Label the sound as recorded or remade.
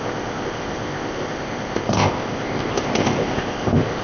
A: remade